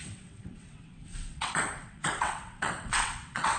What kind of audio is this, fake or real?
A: fake